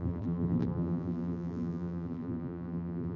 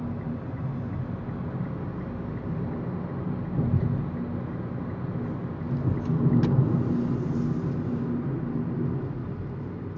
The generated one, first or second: first